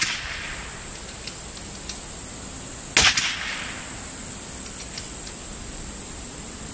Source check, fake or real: real